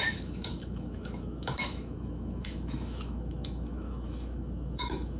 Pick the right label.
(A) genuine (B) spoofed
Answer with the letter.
B